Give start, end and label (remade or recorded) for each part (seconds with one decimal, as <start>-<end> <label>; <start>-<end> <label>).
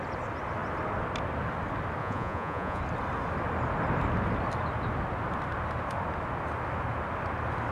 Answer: 0.0-2.0 recorded; 2.0-2.8 remade; 2.8-7.7 recorded